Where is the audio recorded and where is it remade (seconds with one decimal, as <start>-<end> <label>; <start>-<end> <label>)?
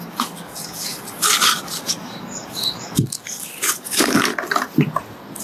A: 0.0-4.3 remade; 4.3-5.4 recorded